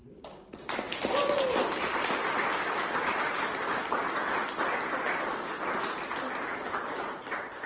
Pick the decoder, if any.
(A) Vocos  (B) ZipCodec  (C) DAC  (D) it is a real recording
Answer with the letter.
D